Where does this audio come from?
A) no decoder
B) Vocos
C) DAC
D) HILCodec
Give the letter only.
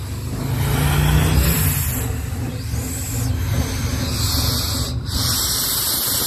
A